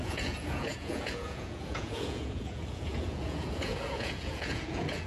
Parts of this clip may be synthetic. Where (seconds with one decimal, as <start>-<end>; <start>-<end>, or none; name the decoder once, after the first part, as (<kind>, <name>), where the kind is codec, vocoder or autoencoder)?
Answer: 0.0-5.1 (vocoder, Vocos)